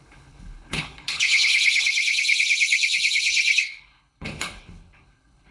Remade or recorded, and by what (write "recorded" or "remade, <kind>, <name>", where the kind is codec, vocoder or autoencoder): remade, codec, HILCodec